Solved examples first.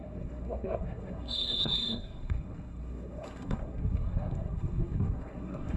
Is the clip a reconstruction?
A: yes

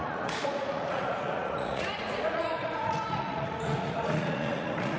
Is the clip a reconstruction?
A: yes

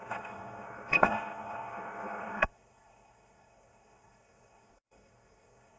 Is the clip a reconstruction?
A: yes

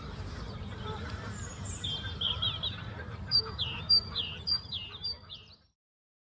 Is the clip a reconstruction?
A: yes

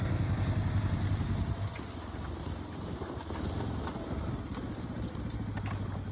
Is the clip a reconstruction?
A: no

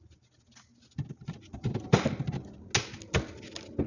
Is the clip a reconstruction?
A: no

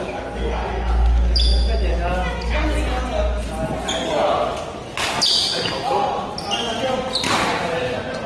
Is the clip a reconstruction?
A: no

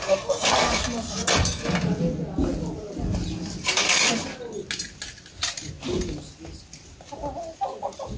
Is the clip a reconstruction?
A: no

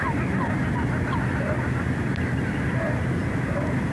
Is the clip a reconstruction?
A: no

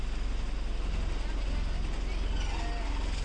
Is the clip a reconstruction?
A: no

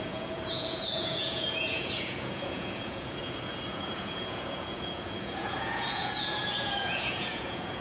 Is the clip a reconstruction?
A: yes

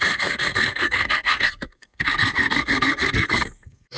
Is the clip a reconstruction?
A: yes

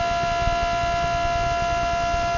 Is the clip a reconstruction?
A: no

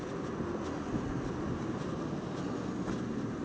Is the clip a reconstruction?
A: no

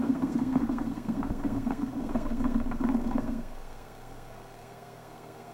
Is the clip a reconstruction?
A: yes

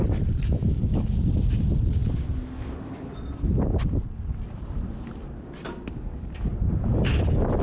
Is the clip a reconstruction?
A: no